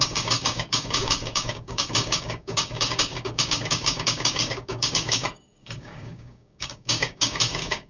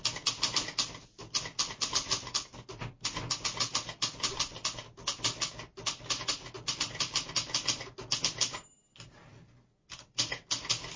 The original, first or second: second